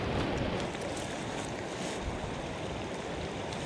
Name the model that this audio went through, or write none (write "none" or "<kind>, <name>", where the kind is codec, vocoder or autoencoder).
none